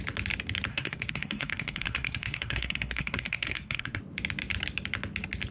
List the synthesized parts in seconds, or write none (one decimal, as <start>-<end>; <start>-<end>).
0.7-4.0